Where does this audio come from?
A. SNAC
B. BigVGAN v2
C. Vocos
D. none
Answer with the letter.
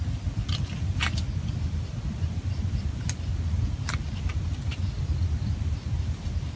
D